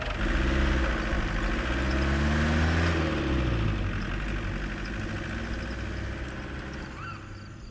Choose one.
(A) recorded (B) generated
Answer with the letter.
A